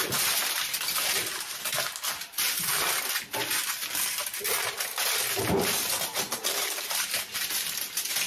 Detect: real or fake fake